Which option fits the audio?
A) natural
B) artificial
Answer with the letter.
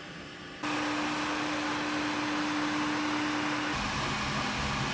A